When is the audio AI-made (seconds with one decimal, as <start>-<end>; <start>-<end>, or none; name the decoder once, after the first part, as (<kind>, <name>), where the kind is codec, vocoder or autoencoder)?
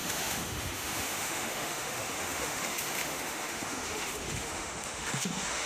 0.0-5.7 (autoencoder, DAC-VAE)